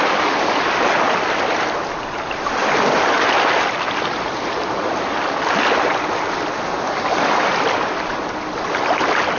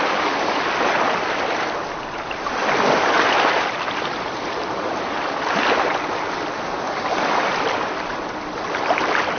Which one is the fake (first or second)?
second